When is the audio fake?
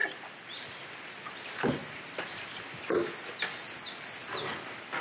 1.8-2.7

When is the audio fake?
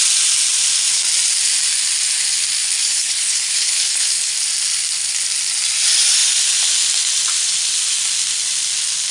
2.8-4.3